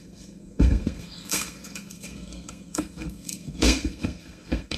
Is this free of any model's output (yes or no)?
no